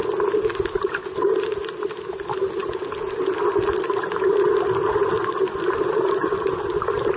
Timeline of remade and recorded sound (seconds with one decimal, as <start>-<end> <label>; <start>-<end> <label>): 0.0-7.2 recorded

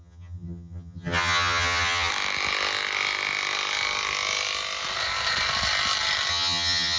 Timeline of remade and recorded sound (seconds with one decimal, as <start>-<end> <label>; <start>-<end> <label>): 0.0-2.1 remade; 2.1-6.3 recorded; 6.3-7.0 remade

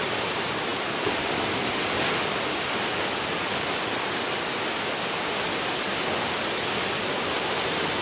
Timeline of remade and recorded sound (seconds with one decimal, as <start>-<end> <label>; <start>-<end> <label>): 0.0-8.0 recorded

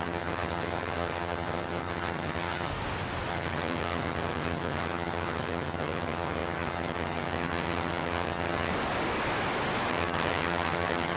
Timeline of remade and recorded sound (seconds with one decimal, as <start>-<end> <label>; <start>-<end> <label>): 0.0-2.7 remade; 2.7-3.3 recorded; 3.3-8.7 remade; 8.7-9.9 recorded; 9.9-11.2 remade

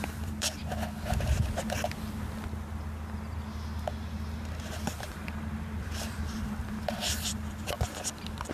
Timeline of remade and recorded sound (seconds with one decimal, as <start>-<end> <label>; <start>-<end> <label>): 0.0-0.6 remade; 0.6-4.9 recorded; 4.9-8.5 remade

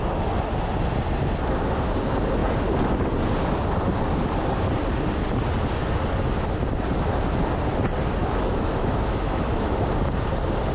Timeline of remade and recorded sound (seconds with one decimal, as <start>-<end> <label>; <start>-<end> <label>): 0.0-8.2 recorded; 8.2-9.9 remade; 9.9-10.7 recorded